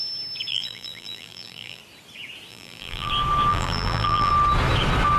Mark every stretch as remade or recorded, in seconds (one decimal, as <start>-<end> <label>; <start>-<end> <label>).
0.0-0.5 recorded; 0.5-1.8 remade; 1.8-2.5 recorded; 2.5-3.1 remade; 3.1-3.5 recorded; 3.5-4.3 remade; 4.3-5.2 recorded